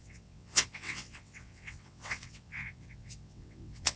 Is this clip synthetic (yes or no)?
yes